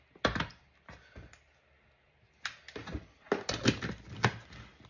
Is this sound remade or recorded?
recorded